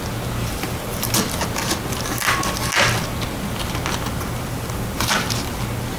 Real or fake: real